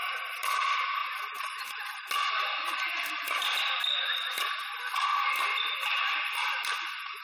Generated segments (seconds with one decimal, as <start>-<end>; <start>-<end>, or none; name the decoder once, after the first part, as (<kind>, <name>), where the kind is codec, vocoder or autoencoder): none